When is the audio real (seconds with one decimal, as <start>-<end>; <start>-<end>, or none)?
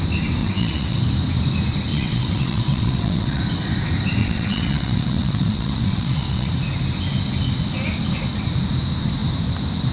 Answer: 0.0-0.4; 1.0-1.9; 3.4-4.2; 6.5-9.9